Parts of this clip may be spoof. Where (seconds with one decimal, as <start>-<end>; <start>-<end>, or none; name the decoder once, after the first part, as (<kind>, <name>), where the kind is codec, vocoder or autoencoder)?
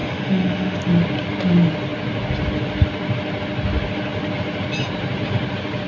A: 0.0-0.8 (autoencoder, DAC-VAE)